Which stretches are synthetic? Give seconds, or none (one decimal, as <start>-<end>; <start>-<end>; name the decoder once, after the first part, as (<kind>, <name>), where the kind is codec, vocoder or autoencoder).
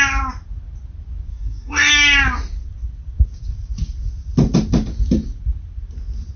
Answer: 1.3-1.9 (codec, DAC)